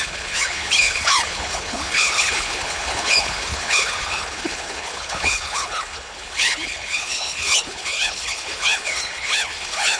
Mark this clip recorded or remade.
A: remade